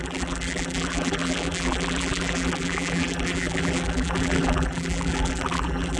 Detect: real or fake fake